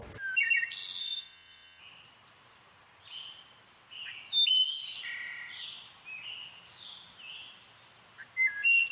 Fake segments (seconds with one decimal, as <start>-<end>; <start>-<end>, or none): 1.0-1.8